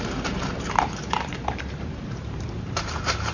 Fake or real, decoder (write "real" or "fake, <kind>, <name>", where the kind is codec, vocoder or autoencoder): fake, vocoder, BigVGAN v2